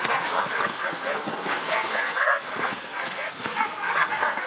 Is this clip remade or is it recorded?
remade